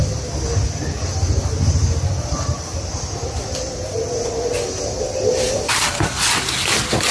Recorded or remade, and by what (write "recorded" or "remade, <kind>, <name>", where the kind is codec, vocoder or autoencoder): recorded